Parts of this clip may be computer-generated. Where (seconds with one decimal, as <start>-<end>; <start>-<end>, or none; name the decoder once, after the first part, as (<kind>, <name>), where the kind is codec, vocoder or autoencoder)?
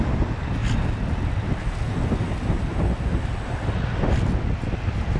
none